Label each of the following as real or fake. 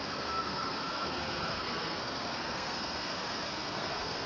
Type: fake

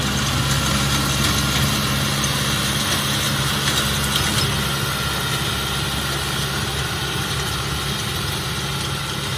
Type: real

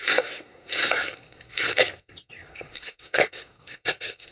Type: fake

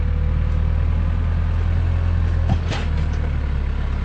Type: real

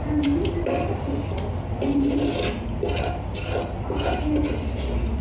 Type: real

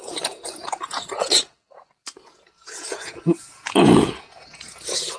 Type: fake